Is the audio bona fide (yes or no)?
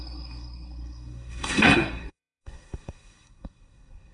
no